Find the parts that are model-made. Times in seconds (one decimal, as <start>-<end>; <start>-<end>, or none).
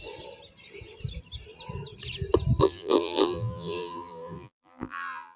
2.6-5.4